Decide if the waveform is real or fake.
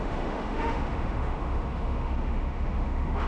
fake